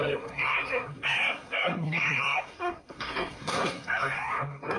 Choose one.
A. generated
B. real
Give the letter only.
A